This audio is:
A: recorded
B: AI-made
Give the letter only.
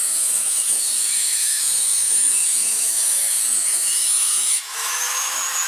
B